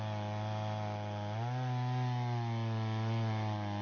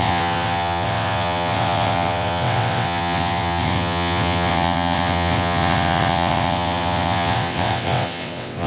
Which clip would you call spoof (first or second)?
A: second